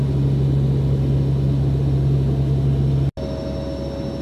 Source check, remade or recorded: recorded